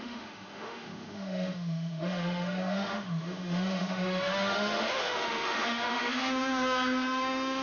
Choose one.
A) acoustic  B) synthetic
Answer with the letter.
B